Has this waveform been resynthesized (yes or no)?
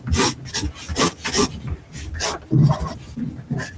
no